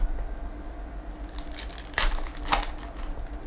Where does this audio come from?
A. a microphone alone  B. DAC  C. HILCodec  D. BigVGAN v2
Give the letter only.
A